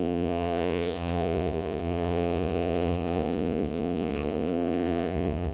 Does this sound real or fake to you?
fake